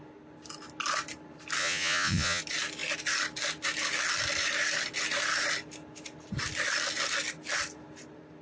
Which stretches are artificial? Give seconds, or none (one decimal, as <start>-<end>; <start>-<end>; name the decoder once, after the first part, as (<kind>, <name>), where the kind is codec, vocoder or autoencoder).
1.6-2.4 (vocoder, Vocos)

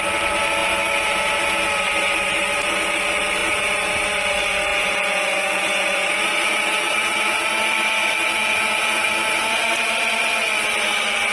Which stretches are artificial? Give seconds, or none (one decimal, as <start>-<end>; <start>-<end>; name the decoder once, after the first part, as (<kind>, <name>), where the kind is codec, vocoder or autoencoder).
0.6-1.7 (vocoder, Vocos); 3.4-3.9; 4.7-7.5; 8.4-9.1

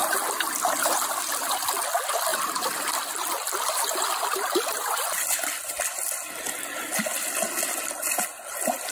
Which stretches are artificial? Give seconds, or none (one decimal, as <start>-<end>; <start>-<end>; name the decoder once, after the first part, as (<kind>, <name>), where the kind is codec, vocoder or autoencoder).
0.0-1.6 (vocoder, BigVGAN v2); 2.3-5.7